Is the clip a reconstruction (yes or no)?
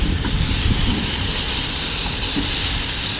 no